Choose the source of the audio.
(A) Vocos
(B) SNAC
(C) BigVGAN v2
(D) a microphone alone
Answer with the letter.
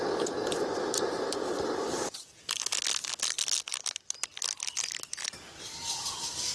D